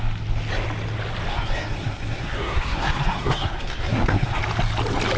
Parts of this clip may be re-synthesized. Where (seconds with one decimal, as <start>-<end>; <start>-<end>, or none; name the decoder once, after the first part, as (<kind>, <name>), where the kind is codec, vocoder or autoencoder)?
1.3-4.4 (codec, SNAC)